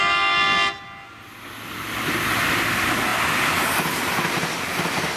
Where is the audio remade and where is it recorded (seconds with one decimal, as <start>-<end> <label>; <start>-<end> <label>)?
0.0-3.1 recorded; 3.1-4.0 remade; 4.0-5.2 recorded